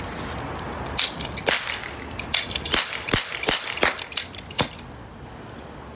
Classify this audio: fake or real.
real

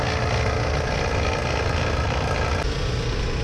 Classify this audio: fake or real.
real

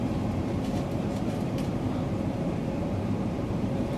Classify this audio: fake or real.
fake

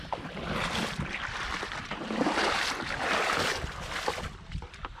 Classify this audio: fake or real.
real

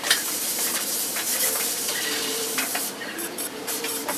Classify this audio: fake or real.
fake